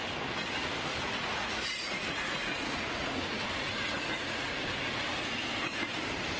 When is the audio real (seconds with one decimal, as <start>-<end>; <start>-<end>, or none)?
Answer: 0.0-0.9; 4.7-6.4